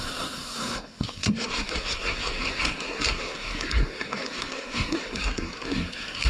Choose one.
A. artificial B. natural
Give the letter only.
A